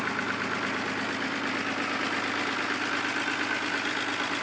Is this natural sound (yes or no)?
yes